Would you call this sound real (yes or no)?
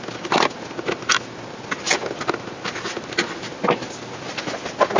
yes